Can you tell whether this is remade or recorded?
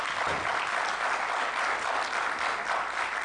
recorded